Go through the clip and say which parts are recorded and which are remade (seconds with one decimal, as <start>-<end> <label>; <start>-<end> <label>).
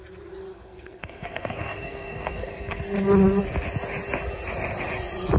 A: 0.0-0.5 recorded; 0.5-2.8 remade; 2.8-5.4 recorded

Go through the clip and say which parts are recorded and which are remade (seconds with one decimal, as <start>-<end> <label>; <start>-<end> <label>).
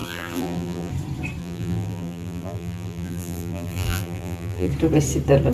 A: 0.0-0.9 remade; 0.9-1.4 recorded; 1.4-4.7 remade; 4.7-5.5 recorded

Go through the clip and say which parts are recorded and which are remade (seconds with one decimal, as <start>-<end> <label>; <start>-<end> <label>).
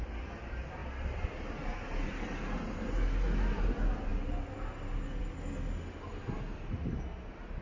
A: 0.0-7.6 recorded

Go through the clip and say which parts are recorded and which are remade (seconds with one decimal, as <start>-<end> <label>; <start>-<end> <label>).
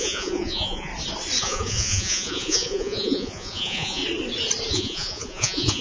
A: 0.0-0.9 remade; 0.9-1.4 recorded; 1.4-4.0 remade; 4.0-4.7 recorded; 4.7-5.8 remade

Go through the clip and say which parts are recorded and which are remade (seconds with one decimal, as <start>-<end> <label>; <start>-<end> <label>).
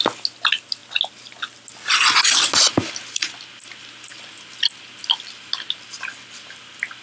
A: 0.0-7.0 recorded